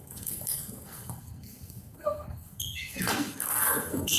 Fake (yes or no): yes